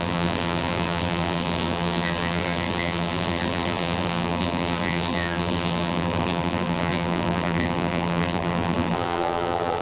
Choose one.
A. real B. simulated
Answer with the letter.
B